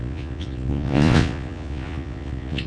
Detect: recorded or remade remade